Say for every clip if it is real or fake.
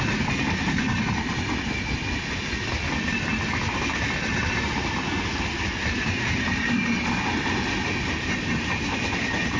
real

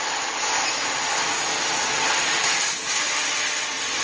real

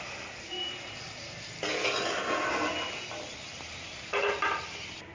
real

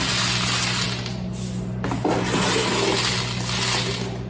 real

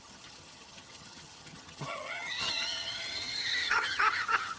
fake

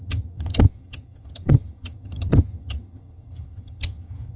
fake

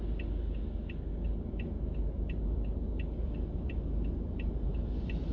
real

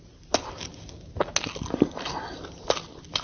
real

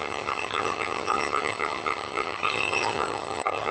fake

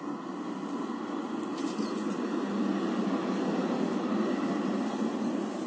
real